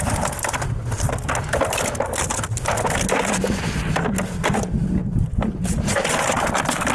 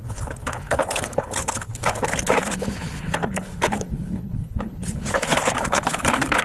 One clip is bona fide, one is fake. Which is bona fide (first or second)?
first